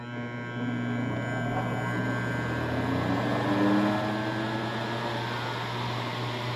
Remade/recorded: recorded